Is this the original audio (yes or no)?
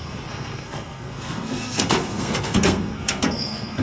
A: no